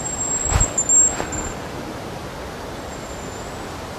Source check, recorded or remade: recorded